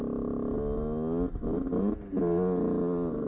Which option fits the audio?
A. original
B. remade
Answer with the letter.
A